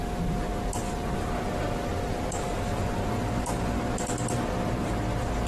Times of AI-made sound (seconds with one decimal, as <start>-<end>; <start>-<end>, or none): none